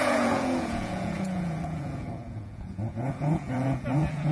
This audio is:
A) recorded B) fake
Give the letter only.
B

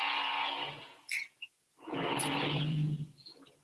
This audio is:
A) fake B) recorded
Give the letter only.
A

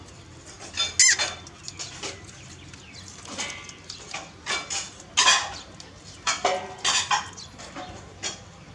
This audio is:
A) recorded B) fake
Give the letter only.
A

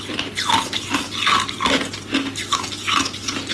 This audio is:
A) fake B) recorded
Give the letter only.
B